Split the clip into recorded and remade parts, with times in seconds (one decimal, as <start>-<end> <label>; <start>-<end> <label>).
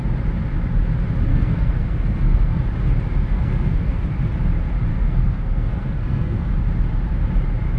0.0-1.3 recorded; 1.3-2.6 remade; 2.6-3.3 recorded; 3.3-4.0 remade; 4.0-4.9 recorded; 4.9-6.5 remade; 6.5-7.8 recorded